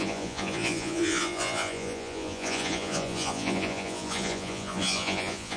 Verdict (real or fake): fake